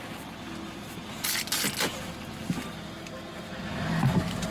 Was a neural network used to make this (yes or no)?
no